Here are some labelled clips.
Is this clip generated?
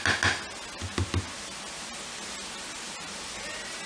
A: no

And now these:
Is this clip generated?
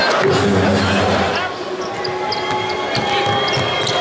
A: no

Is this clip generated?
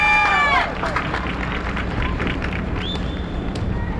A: yes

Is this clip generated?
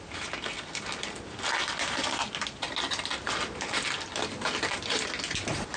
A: no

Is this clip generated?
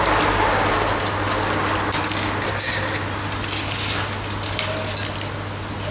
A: no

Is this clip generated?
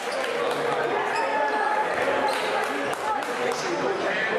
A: no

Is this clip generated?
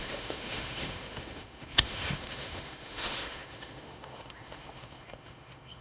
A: yes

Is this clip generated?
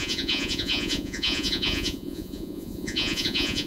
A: yes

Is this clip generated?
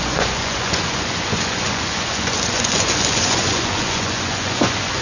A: yes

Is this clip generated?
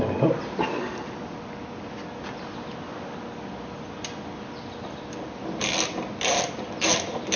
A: no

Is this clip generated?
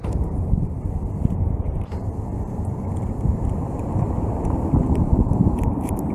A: yes